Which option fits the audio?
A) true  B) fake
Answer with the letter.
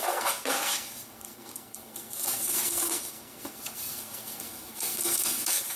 B